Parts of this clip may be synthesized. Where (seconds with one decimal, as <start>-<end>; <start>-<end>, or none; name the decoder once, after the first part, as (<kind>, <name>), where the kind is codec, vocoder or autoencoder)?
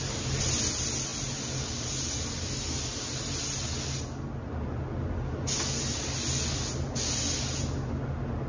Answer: none